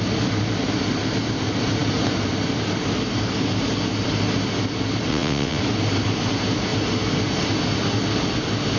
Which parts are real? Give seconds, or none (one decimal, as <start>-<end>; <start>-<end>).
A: 0.0-5.1; 5.6-8.8